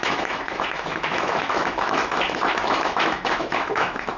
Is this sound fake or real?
fake